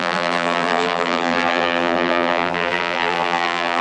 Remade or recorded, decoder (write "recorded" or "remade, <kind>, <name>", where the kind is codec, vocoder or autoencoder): remade, vocoder, BigVGAN v2